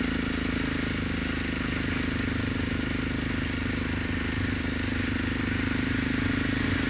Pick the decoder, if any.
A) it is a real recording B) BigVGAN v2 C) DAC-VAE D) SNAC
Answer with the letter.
A